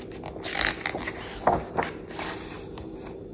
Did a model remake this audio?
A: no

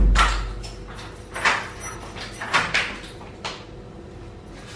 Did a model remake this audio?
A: no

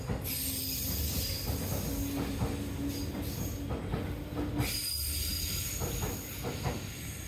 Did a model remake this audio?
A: no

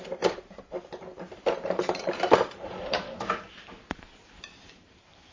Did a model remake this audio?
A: yes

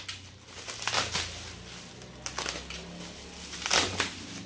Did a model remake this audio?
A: no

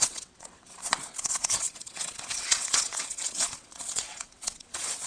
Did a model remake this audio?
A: yes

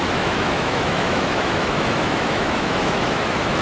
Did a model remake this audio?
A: yes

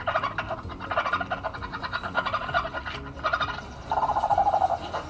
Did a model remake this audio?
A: yes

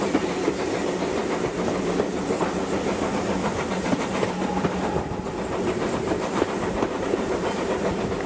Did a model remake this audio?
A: no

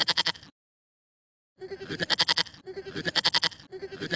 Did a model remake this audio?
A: no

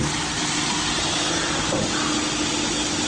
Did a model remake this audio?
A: no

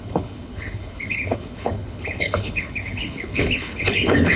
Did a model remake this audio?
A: yes